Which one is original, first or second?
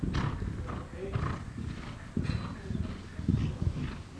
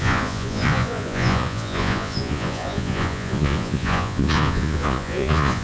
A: first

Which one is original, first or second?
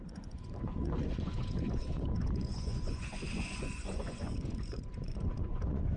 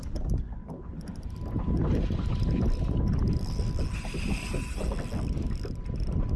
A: second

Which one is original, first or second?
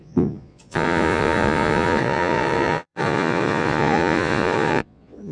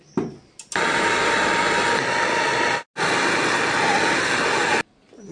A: second